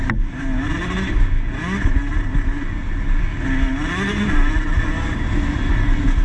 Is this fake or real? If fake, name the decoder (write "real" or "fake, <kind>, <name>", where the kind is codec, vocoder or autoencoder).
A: real